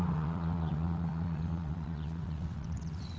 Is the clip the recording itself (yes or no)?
no